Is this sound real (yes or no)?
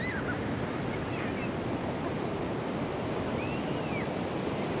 yes